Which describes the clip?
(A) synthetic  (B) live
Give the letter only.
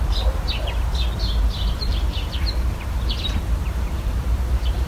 A